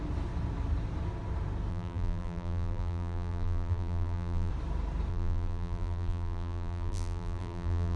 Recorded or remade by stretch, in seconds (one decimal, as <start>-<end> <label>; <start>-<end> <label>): 0.0-1.7 recorded; 1.7-4.5 remade; 4.5-5.1 recorded; 5.1-8.0 remade